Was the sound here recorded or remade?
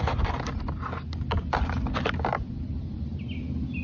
recorded